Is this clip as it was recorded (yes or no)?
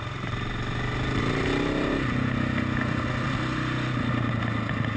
yes